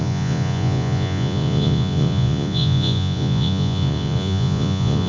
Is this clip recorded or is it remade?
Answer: remade